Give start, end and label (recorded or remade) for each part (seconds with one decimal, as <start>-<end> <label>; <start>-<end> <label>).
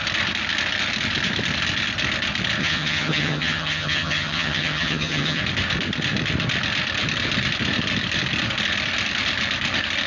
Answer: 0.0-2.6 recorded; 2.6-5.4 remade; 5.4-10.1 recorded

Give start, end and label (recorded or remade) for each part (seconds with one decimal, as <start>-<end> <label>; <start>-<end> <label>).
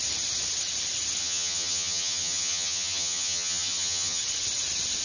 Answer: 0.0-1.2 recorded; 1.2-4.2 remade; 4.2-5.0 recorded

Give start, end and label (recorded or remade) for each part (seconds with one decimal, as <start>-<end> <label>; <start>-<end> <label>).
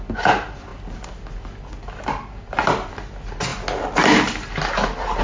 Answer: 0.0-5.2 recorded